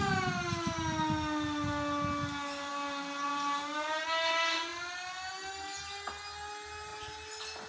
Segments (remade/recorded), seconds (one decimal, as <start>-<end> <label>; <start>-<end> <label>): 0.0-7.7 recorded